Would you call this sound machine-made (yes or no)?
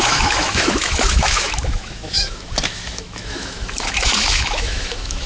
yes